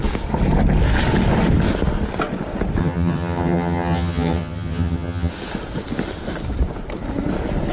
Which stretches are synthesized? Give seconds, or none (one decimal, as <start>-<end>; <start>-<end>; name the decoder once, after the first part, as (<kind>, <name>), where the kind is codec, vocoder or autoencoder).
2.8-5.3 (vocoder, HiFi-GAN)